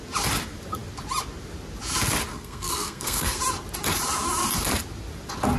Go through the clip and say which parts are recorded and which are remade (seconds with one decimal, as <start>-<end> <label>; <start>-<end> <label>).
0.0-2.3 recorded; 2.3-3.4 remade; 3.4-5.6 recorded